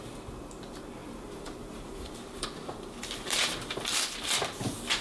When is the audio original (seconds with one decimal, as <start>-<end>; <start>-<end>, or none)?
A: 0.0-1.0; 3.7-5.0